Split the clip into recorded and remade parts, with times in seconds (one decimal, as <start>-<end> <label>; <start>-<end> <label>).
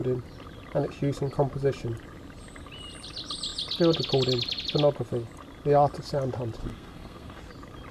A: 0.0-6.6 recorded; 6.6-7.5 remade; 7.5-7.9 recorded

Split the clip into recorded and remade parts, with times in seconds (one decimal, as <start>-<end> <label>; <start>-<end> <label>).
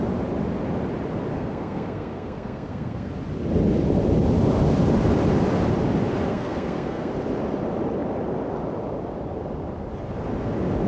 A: 0.0-1.3 recorded; 1.3-3.1 remade; 3.1-6.3 recorded; 6.3-7.1 remade; 7.1-10.9 recorded